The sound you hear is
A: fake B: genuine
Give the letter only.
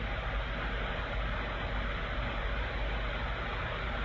B